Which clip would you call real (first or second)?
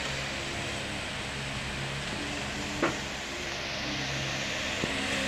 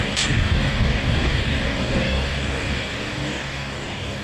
first